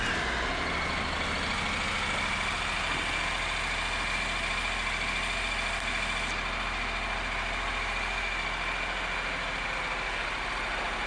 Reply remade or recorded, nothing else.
recorded